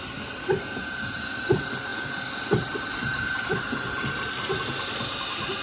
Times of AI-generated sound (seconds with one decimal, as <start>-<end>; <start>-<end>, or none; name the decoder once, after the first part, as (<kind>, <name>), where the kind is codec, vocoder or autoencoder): none